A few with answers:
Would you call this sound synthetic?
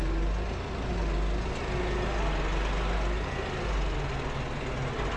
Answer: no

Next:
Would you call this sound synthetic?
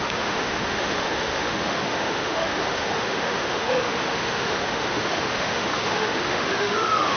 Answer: yes